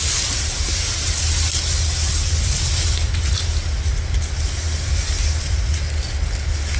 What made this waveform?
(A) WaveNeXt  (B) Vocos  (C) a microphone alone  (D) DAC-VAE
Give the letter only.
C